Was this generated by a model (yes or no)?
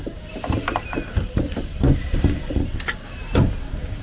yes